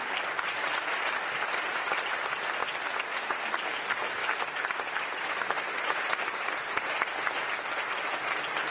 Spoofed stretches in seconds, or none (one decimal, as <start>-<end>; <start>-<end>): 0.0-0.7